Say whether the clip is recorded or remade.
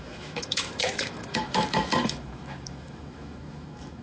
remade